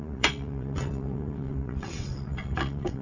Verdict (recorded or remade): remade